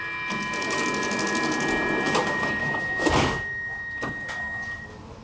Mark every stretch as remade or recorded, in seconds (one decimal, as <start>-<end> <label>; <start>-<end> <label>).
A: 0.0-2.6 recorded; 2.6-3.1 remade; 3.1-5.2 recorded